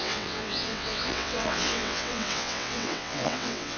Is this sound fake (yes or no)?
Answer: yes